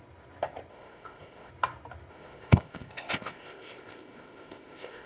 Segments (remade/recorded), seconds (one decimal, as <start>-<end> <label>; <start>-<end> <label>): 0.0-0.7 recorded; 0.7-1.5 remade; 1.5-2.1 recorded; 2.1-5.1 remade